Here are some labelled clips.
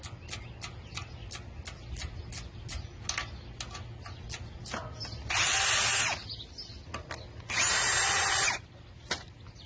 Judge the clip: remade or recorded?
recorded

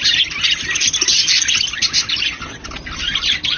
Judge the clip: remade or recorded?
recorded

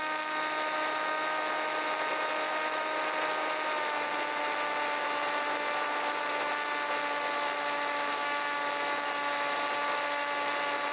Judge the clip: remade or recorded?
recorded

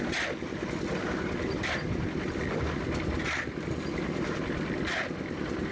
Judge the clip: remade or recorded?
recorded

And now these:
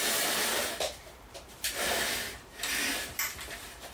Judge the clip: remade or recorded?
remade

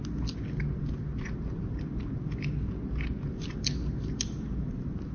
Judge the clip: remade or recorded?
recorded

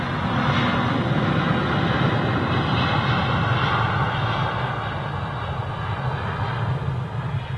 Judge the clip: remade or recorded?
recorded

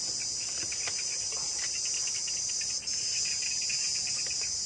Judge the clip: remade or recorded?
recorded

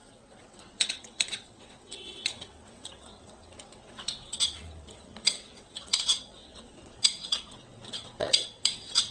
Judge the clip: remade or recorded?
remade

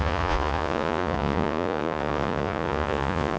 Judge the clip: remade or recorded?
remade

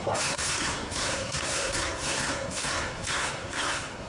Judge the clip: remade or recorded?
remade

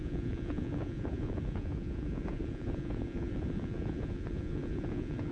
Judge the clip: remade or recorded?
remade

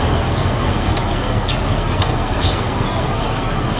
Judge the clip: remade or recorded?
remade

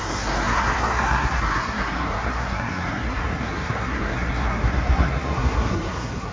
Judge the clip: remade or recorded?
remade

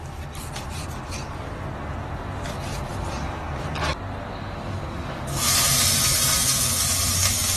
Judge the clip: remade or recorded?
recorded